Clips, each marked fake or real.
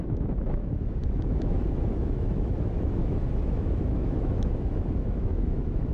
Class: fake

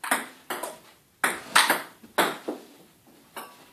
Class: real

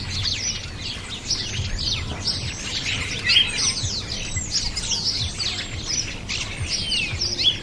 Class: real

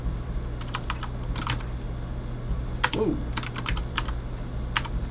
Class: real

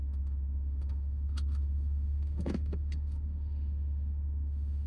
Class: fake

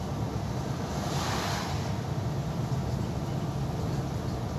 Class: real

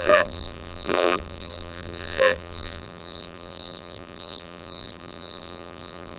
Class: fake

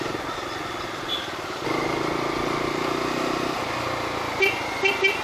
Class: real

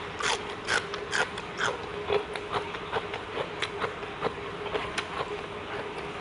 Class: real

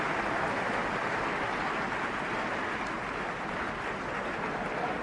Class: real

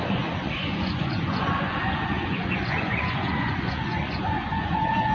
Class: fake